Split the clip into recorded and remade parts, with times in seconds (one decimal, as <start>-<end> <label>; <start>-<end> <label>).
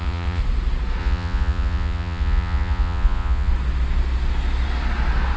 0.0-0.4 remade; 0.4-1.0 recorded; 1.0-3.5 remade; 3.5-5.4 recorded